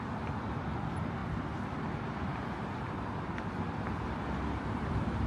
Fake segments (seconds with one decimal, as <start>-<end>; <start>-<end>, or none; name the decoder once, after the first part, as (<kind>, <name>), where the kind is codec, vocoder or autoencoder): none